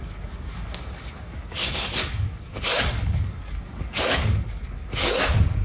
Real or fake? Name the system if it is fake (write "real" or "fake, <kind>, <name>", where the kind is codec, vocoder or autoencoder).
fake, codec, DAC